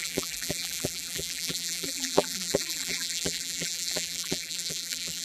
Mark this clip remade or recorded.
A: remade